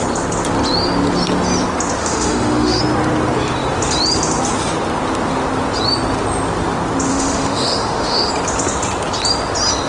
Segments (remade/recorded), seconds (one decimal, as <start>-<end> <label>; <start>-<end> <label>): 0.0-2.0 recorded; 2.0-2.8 remade; 2.8-7.1 recorded; 7.1-8.3 remade; 8.3-9.9 recorded